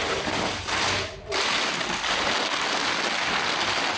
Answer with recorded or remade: recorded